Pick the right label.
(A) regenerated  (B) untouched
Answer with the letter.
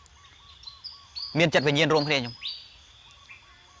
B